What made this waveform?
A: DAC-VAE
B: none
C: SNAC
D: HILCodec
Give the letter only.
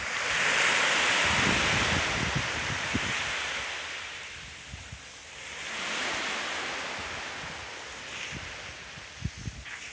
B